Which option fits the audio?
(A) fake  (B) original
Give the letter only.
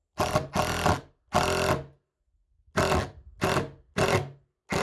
B